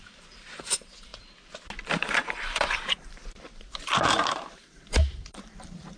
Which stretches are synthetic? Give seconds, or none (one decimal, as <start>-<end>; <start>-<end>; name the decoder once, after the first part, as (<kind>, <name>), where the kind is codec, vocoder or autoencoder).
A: 0.0-1.1 (vocoder, BigVGAN v2); 2.0-3.2; 4.3-6.0